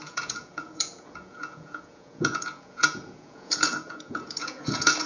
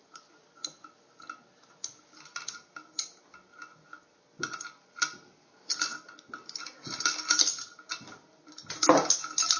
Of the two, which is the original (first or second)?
second